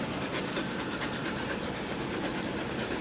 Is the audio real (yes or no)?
yes